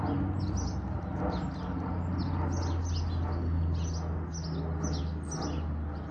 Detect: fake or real real